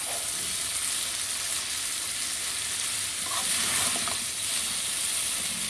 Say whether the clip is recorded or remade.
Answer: recorded